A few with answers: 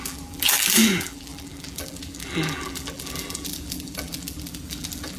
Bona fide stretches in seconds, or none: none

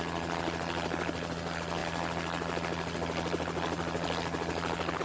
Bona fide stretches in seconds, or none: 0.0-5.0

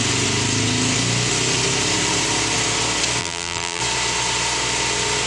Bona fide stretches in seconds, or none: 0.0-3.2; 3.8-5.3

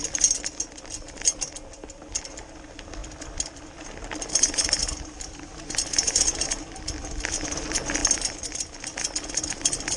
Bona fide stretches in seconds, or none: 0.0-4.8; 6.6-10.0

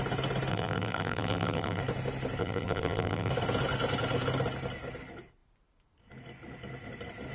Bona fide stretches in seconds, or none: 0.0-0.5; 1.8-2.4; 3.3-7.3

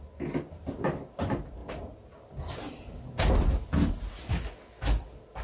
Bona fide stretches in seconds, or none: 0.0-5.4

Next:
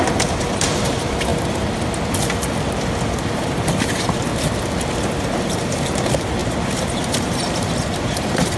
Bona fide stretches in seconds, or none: 1.3-3.3; 4.3-4.9